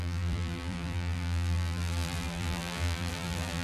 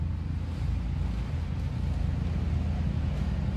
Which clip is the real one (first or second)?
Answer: second